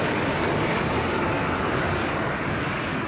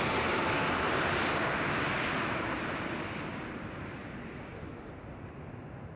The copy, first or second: first